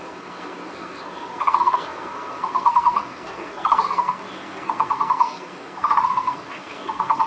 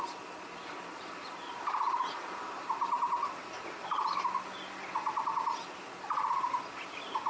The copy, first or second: first